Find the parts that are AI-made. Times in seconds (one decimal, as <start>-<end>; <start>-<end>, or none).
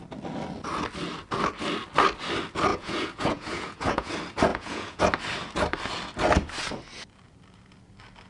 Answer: 2.7-4.1; 4.5-5.0